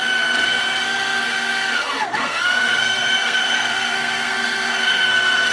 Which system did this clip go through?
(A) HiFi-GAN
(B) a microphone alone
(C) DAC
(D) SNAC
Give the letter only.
D